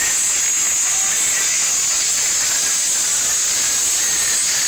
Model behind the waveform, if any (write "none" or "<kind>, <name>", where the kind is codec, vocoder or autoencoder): none